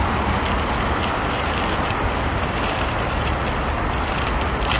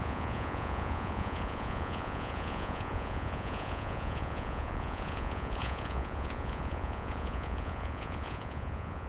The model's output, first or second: second